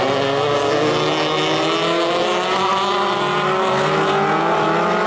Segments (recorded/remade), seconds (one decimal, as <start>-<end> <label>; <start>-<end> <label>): 0.0-5.1 recorded